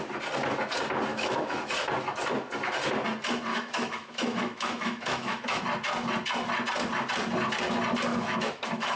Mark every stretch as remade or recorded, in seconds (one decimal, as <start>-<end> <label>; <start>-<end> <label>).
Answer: 0.0-1.1 recorded; 1.1-1.7 remade; 1.7-3.5 recorded; 3.5-5.6 remade; 5.6-8.1 recorded; 8.1-9.0 remade